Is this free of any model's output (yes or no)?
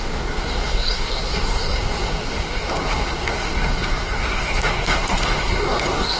no